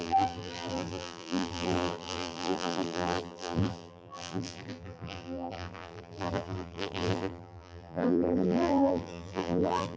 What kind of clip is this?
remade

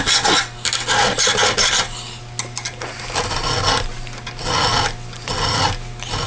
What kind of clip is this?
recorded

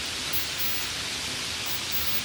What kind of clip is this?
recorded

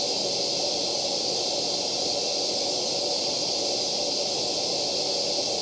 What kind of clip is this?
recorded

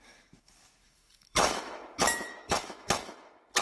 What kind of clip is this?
remade